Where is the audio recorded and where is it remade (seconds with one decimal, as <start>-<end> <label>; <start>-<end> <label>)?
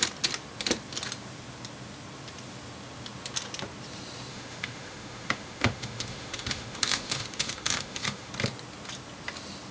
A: 0.0-4.3 recorded; 4.3-8.3 remade; 8.3-9.7 recorded